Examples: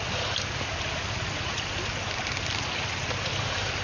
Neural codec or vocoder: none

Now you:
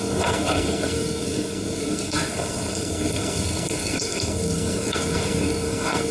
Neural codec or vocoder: codec, SNAC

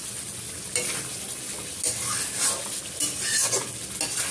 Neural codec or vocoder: none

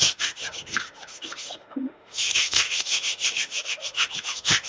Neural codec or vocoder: autoencoder, DAC-VAE